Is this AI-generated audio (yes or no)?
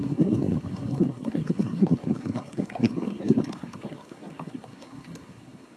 yes